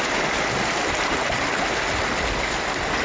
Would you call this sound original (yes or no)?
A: yes